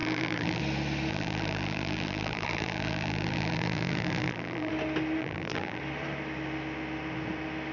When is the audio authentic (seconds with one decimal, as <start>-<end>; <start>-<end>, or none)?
0.6-1.1; 4.7-5.2; 5.8-7.7